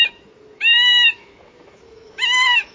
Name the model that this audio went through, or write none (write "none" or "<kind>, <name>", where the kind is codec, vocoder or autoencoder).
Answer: autoencoder, DAC-VAE